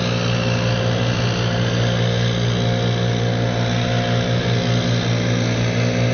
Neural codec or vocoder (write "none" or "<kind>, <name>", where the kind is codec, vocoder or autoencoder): none